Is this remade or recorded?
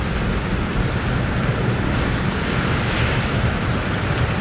remade